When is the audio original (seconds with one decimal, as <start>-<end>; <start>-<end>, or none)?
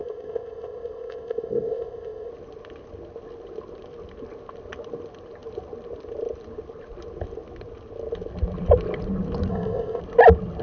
2.3-9.5; 10.0-10.6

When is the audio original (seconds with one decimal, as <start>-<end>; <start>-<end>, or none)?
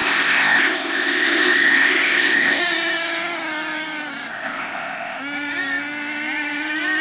2.6-4.3; 5.2-7.0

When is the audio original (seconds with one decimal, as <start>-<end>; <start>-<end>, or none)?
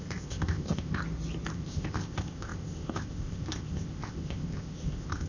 1.0-1.5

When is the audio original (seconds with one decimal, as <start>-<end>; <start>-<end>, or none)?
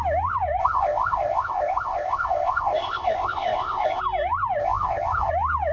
0.0-0.6; 4.0-4.6; 5.3-5.7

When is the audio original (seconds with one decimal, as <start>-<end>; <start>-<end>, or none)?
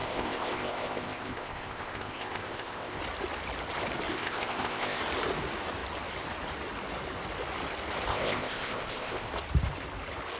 3.0-4.1; 5.0-8.1; 9.3-10.4